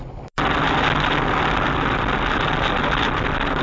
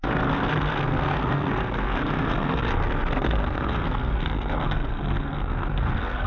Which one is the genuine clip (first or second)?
first